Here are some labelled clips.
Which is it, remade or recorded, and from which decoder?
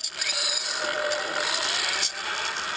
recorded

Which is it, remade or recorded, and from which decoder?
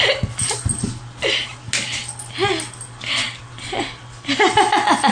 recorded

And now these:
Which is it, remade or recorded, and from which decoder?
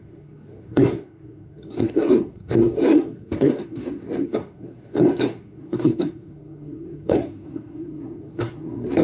remade, codec, SNAC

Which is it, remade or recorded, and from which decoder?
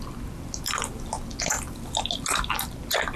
recorded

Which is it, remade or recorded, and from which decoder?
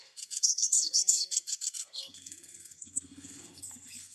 remade, codec, SNAC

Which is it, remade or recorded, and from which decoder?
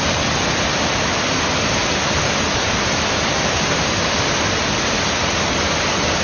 recorded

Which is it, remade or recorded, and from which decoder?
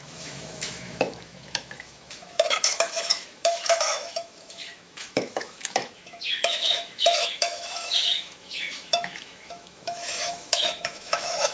remade, autoencoder, DAC-VAE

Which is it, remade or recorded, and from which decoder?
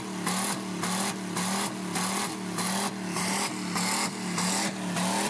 recorded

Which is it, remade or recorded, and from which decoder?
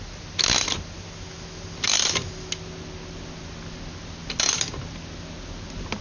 recorded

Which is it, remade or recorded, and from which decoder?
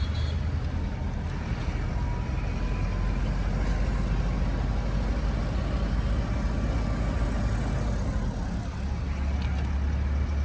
recorded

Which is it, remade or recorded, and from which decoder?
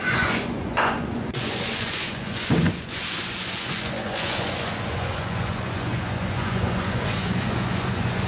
remade, vocoder, Vocos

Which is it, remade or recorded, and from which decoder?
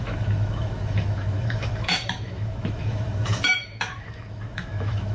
remade, autoencoder, DAC-VAE